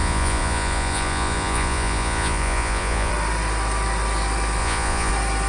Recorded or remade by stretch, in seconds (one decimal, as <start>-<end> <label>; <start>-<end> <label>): 0.0-3.1 remade; 3.1-4.6 recorded; 4.6-5.1 remade; 5.1-5.5 recorded